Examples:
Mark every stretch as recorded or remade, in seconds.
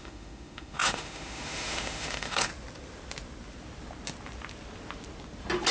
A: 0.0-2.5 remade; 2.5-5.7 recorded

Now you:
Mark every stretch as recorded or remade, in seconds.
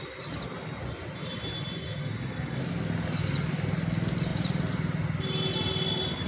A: 0.0-2.0 recorded; 2.0-2.6 remade; 2.6-6.3 recorded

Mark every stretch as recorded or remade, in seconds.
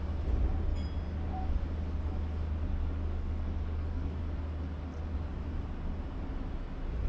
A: 0.0-2.8 recorded; 2.8-4.2 remade; 4.2-7.1 recorded